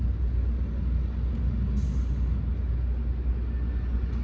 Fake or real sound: real